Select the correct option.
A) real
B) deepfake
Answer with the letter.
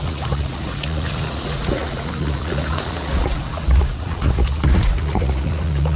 B